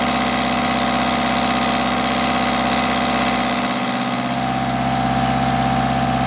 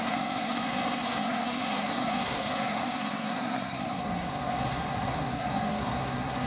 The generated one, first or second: second